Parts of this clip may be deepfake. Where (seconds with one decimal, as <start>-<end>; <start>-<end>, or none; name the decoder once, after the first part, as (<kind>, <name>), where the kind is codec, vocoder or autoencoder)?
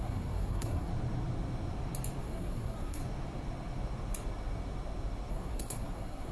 0.0-0.9 (codec, SNAC); 2.2-3.0; 5.3-6.3